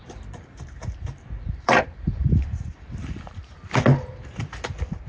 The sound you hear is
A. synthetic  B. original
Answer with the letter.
A